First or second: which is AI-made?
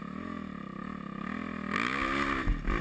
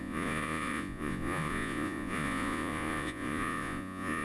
second